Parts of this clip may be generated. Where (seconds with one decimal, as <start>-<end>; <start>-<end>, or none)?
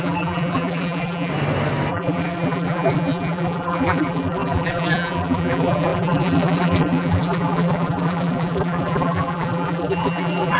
0.0-1.3; 1.9-10.6